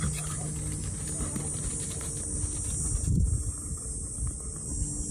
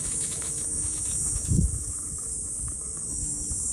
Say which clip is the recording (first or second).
first